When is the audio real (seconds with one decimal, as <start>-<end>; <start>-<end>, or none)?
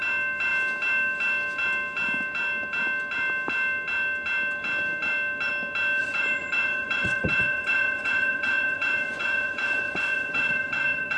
0.0-6.0